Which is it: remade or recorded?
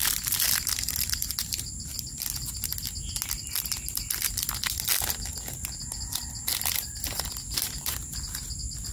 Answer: recorded